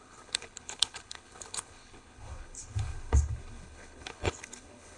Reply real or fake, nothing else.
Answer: fake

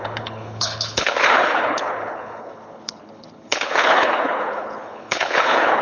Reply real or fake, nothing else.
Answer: fake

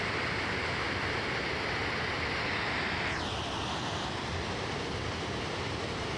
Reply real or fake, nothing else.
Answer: real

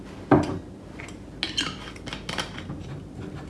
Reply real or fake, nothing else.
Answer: real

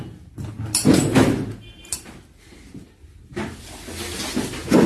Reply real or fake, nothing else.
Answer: real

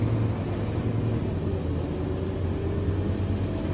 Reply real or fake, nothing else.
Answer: real